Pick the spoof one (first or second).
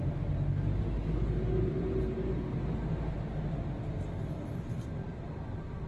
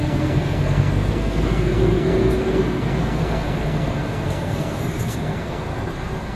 second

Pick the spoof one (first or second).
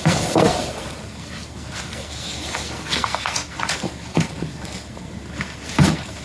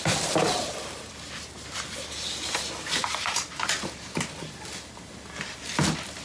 first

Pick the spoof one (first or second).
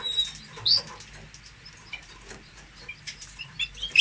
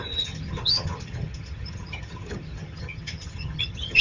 second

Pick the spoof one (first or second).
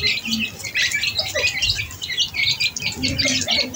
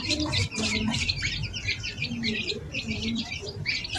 second